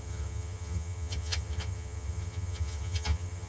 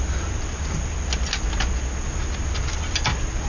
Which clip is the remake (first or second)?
first